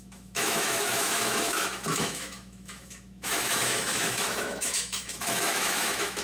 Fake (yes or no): yes